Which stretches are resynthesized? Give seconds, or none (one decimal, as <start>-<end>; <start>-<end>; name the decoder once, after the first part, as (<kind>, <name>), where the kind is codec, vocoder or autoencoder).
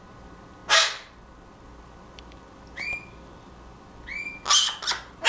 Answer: none